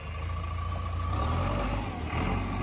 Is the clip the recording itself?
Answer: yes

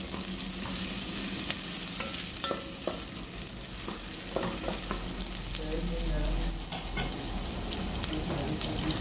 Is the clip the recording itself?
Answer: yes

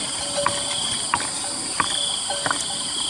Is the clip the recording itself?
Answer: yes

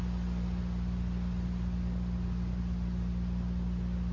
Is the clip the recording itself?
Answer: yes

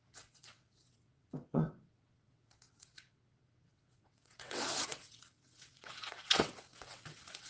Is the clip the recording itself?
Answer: no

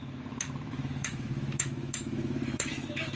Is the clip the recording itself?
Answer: no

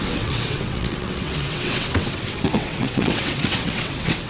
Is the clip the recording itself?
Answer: no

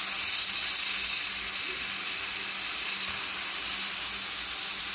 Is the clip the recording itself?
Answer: yes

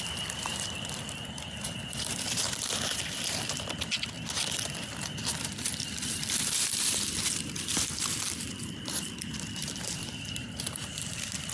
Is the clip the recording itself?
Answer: no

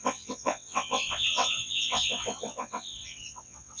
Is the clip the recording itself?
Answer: no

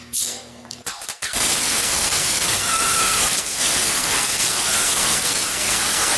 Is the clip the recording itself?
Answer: no